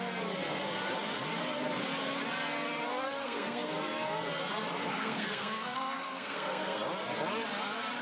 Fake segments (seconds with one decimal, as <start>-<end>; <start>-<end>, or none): 3.2-3.7; 4.9-6.8